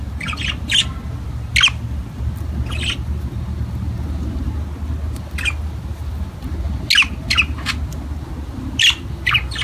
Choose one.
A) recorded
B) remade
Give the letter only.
A